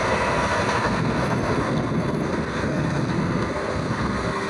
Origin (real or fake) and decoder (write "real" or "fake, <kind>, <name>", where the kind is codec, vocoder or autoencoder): fake, codec, SNAC